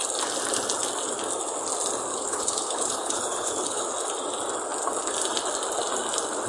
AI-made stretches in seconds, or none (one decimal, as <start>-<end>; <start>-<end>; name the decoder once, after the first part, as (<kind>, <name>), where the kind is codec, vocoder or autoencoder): 2.1-3.9 (codec, HILCodec)